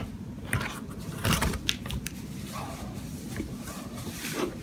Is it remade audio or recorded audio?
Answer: remade